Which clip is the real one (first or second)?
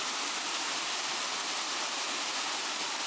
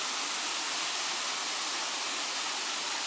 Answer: second